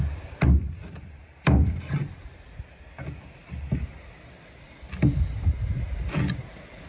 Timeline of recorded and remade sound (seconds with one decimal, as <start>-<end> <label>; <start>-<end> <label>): 0.0-0.8 recorded; 0.8-2.1 remade; 2.1-6.9 recorded